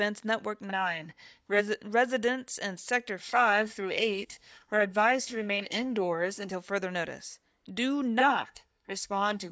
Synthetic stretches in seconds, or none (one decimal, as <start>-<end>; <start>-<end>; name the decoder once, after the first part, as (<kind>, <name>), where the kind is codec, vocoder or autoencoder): 0.7-1.6 (codec, SNAC); 3.2-6.5; 8.2-9.5